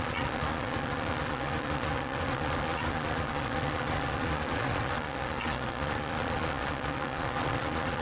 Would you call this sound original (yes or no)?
no